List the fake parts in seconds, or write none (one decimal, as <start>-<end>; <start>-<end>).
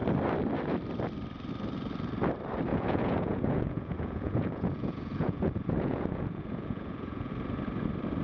2.7-7.3